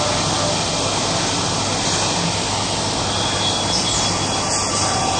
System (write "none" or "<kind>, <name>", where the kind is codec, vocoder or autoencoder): none